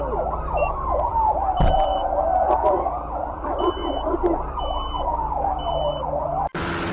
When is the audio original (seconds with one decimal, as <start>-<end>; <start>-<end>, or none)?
none